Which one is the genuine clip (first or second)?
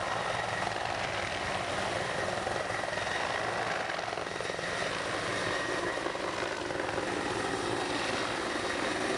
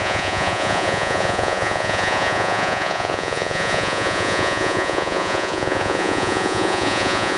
first